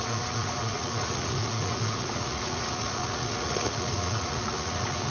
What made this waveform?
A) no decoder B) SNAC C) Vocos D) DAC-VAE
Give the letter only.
C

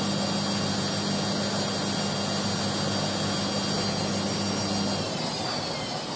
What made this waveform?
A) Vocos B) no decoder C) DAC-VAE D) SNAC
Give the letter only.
B